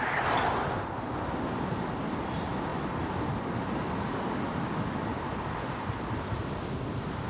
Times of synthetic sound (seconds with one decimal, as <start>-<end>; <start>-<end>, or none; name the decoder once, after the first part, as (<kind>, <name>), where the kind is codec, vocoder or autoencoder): none